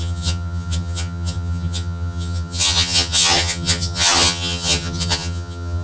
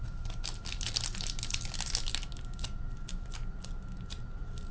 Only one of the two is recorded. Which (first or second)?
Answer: second